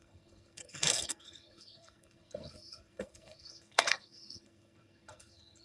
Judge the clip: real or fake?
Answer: fake